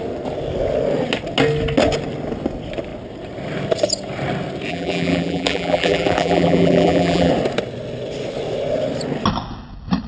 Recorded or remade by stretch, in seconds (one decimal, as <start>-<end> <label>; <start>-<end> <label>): 0.0-4.7 recorded; 4.7-7.3 remade; 7.3-10.1 recorded